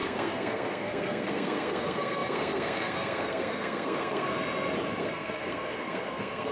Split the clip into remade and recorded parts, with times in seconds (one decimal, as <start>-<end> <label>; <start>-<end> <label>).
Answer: 0.0-4.3 remade; 4.3-5.0 recorded; 5.0-6.5 remade

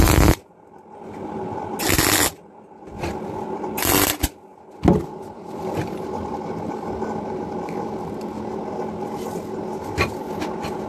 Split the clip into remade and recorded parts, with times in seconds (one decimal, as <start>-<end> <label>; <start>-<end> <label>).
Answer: 0.0-10.9 recorded

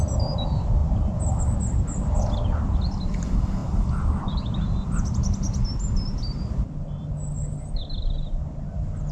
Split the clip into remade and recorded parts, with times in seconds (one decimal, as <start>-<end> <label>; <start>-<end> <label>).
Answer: 0.0-9.1 recorded

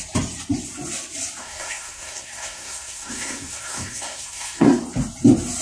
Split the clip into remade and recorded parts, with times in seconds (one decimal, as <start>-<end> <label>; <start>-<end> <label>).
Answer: 0.0-1.4 recorded; 1.4-4.8 remade; 4.8-5.6 recorded